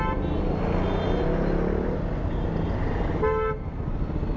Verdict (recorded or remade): recorded